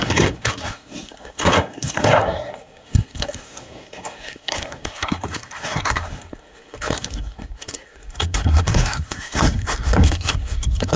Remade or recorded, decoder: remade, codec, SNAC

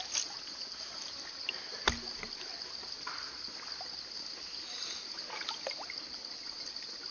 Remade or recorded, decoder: recorded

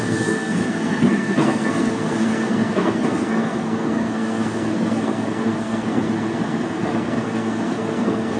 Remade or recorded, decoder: remade, codec, SNAC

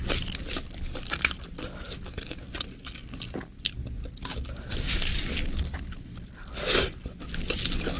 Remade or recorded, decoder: recorded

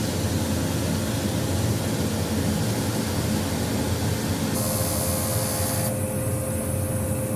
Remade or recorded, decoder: recorded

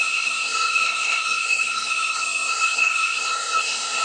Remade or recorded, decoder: remade, codec, SNAC